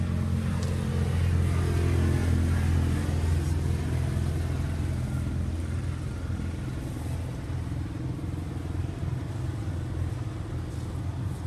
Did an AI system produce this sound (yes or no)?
no